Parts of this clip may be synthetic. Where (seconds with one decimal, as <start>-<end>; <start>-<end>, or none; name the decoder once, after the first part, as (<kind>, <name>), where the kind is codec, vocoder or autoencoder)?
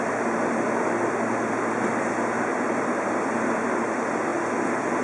none